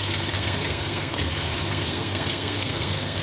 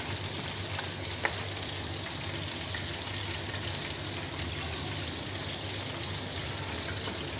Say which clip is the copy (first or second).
first